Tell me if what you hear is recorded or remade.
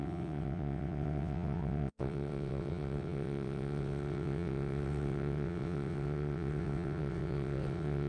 remade